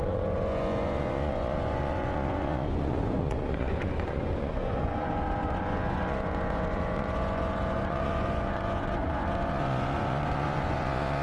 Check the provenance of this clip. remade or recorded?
remade